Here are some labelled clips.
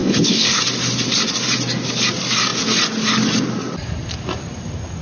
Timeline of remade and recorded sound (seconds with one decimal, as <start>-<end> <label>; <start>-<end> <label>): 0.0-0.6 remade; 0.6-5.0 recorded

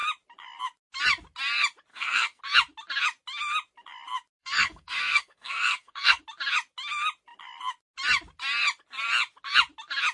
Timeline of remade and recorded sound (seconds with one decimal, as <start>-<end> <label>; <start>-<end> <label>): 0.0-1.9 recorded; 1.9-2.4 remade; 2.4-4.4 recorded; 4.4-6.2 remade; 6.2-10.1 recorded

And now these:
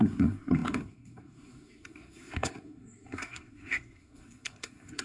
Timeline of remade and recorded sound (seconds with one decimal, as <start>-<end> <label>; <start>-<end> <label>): 0.0-5.0 remade